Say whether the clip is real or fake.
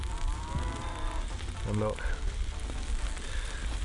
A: real